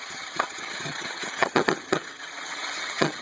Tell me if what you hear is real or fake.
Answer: fake